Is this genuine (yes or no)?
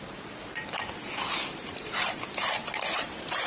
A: yes